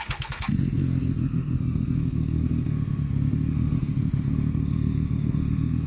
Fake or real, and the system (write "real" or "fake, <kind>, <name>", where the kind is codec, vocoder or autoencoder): fake, codec, SNAC